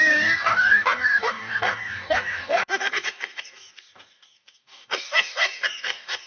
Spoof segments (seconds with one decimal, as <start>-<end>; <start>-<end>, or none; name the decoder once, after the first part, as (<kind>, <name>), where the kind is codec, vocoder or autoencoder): 0.0-6.3 (codec, DAC)